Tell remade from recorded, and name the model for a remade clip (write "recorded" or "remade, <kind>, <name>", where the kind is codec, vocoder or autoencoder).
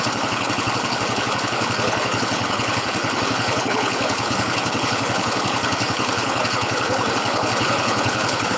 remade, codec, HILCodec